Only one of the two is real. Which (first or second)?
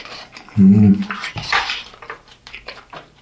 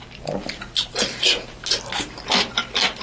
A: second